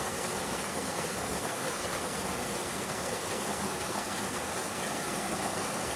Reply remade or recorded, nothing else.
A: remade